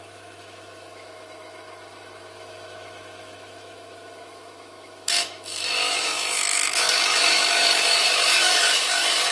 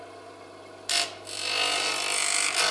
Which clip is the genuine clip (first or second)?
second